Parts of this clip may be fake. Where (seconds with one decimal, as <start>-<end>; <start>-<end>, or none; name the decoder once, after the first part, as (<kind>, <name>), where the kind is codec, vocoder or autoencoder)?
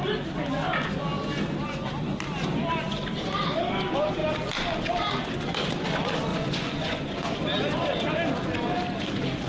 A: 6.3-7.4 (vocoder, Vocos)